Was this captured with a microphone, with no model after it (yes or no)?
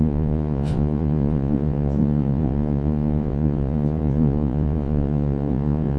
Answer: no